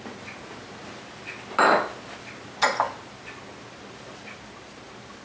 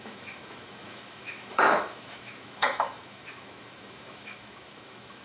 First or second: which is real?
first